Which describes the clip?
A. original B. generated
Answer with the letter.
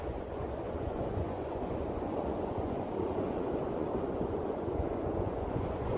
B